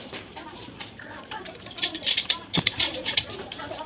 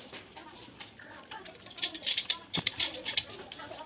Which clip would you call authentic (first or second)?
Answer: second